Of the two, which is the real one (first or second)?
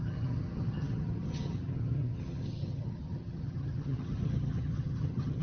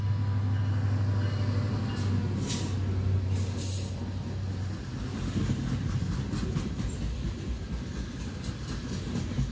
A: second